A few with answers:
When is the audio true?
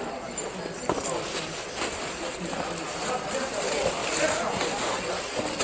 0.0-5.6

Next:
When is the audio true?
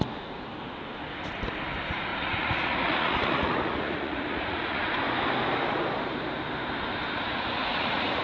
0.0-2.1; 4.9-7.1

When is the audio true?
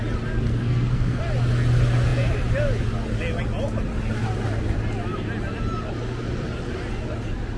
0.0-0.5; 1.2-7.6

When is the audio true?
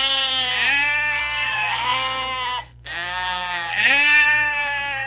0.5-1.2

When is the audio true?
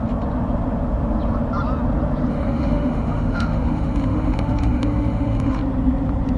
0.0-2.3; 5.6-6.4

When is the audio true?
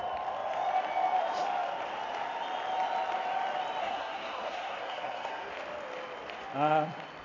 0.0-3.8; 5.5-7.2